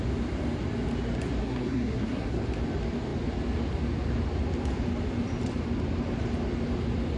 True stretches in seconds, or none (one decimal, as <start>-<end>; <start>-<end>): 0.0-1.4; 2.4-7.2